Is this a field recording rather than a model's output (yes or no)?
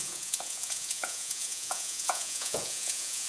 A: no